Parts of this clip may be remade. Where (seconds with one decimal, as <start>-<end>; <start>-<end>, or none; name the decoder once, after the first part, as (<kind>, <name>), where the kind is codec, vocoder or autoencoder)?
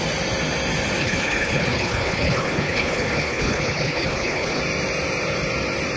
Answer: 1.0-4.6 (codec, HILCodec)